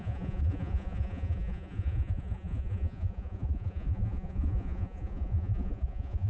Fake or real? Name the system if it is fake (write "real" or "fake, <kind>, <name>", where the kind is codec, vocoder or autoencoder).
fake, vocoder, Vocos